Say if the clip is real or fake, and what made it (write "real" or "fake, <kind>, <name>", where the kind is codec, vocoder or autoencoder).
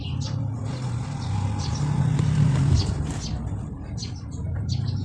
real